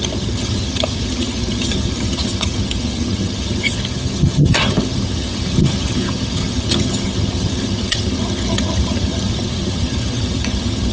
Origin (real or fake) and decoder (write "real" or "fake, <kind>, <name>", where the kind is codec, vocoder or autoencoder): fake, vocoder, HiFi-GAN